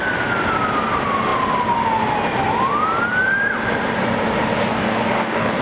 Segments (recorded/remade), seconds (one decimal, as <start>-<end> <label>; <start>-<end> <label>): 0.0-4.7 recorded; 4.7-5.6 remade